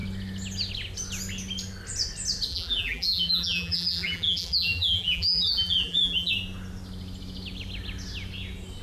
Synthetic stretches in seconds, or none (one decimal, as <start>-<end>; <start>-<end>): 2.5-6.3